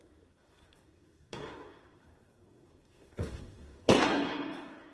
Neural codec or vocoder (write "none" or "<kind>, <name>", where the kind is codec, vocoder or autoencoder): codec, SNAC